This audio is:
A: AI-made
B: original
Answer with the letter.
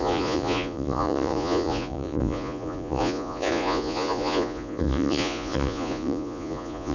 A